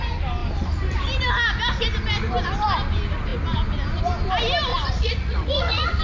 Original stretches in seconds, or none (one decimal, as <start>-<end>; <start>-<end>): 0.0-4.7